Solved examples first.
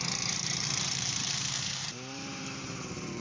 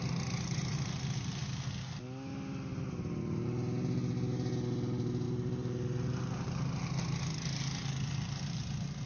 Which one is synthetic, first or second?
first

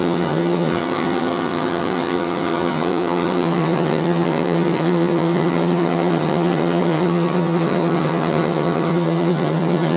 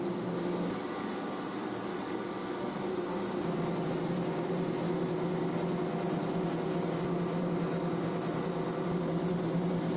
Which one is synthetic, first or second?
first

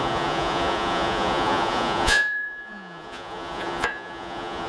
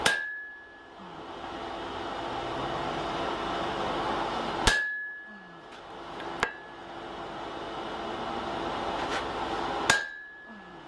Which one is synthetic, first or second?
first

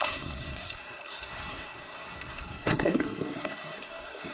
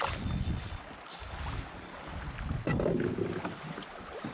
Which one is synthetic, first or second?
first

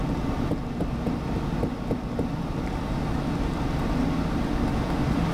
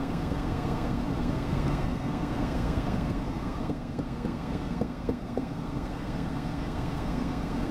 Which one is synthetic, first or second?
second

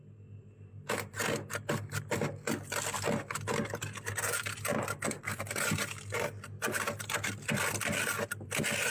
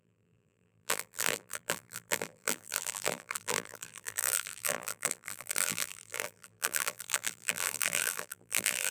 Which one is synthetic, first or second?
second